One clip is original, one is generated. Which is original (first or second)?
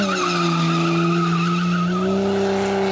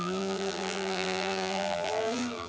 first